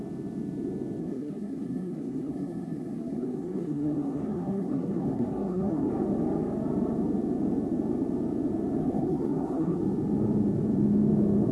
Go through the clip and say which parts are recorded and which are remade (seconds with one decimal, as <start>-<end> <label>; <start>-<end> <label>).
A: 0.0-1.0 recorded; 1.0-5.9 remade; 5.9-8.8 recorded; 8.8-9.8 remade; 9.8-11.5 recorded